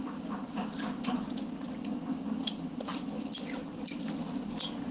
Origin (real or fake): real